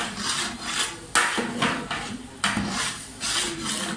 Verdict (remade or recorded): recorded